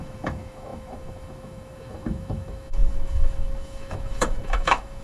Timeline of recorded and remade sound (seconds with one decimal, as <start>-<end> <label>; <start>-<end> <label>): 0.0-5.0 remade